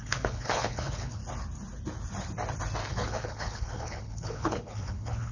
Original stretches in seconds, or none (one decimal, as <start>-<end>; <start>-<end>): 1.2-2.9